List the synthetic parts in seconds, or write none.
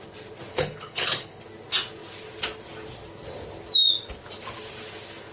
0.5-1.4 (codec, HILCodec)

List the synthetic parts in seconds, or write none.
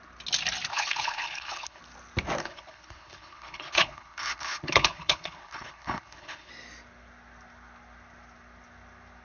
0.7-1.8 (codec, HILCodec); 2.4-6.5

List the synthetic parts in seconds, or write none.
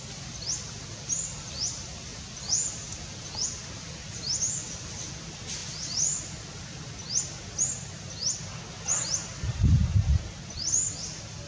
none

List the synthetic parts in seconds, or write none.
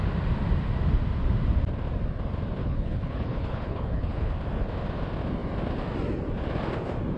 2.6-4.3 (codec, HILCodec)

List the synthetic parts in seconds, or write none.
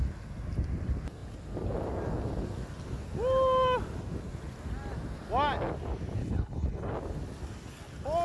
6.2-6.9 (codec, HILCodec)